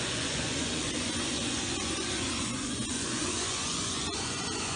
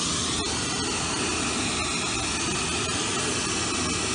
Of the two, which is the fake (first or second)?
first